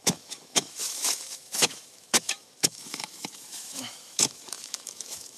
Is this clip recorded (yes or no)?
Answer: no